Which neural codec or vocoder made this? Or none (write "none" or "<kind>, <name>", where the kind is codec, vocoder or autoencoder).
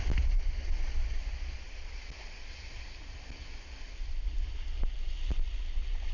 none